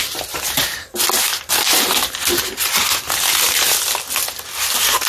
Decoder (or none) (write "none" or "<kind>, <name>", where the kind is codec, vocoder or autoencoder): none